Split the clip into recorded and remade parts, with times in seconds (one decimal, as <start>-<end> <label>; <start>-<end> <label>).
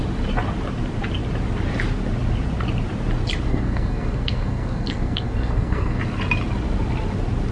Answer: 0.0-3.5 recorded; 3.5-6.0 remade; 6.0-7.5 recorded